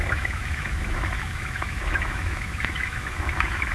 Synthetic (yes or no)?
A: yes